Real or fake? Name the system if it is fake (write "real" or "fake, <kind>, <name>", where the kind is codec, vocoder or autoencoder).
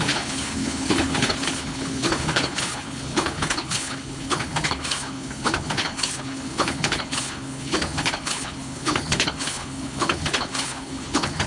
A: fake, codec, HILCodec